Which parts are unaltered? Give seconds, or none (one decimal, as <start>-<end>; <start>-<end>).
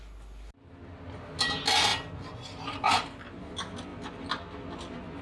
0.0-1.9; 3.5-3.9; 4.7-5.2